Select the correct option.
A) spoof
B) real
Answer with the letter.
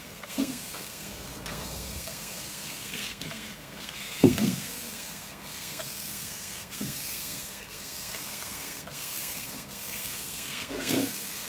A